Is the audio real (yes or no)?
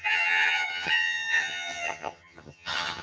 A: no